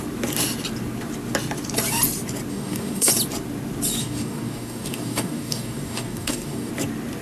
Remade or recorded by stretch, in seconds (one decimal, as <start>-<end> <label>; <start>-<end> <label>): 0.0-2.5 recorded; 2.5-3.1 remade; 3.1-4.0 recorded; 4.0-6.7 remade; 6.7-7.2 recorded